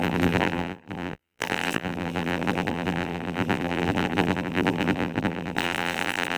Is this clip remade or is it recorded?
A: remade